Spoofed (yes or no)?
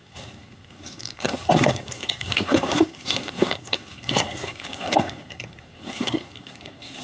yes